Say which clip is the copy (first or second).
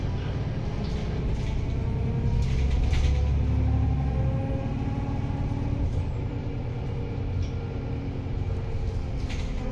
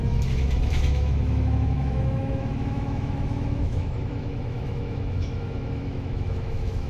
second